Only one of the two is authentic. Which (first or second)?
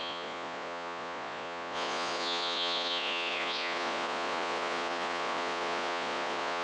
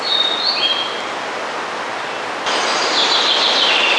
second